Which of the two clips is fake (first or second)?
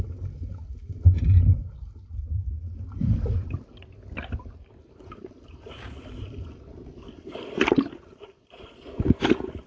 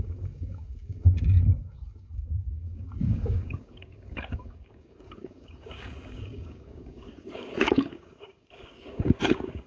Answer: second